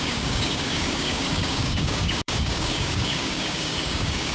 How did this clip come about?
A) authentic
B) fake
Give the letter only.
B